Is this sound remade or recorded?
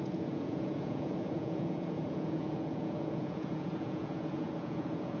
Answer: remade